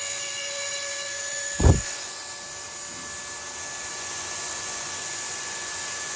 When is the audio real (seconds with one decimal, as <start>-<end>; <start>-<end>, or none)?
2.2-3.9